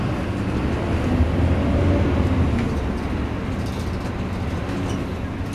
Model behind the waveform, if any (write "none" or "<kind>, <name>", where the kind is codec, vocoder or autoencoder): none